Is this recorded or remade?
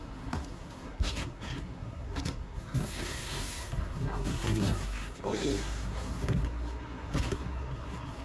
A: remade